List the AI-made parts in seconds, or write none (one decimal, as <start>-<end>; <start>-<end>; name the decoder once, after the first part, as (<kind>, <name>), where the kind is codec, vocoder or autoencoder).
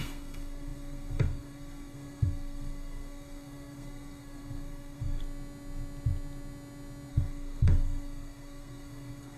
0.0-5.2 (codec, SNAC); 7.1-9.4